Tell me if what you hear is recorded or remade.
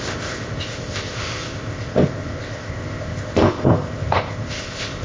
remade